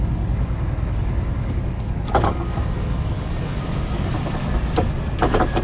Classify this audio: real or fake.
fake